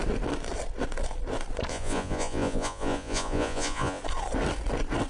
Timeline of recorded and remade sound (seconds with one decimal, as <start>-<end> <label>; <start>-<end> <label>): 0.0-1.7 recorded; 1.7-4.0 remade; 4.0-5.1 recorded